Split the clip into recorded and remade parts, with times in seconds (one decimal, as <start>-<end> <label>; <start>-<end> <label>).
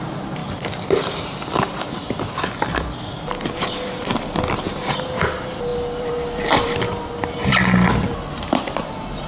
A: 0.0-0.4 recorded; 0.4-4.9 remade; 4.9-5.7 recorded; 5.7-7.5 remade; 7.5-9.3 recorded